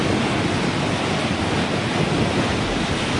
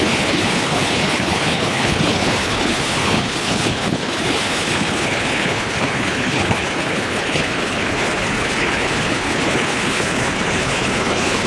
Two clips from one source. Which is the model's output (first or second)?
second